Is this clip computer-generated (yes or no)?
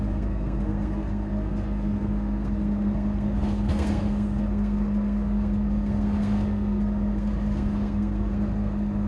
yes